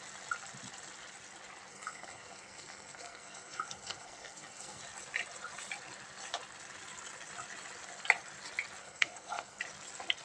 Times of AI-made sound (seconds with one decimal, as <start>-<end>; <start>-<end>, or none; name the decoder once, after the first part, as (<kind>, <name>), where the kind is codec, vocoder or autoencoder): 1.7-4.8 (codec, SNAC); 8.8-9.6